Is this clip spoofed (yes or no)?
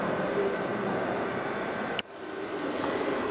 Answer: yes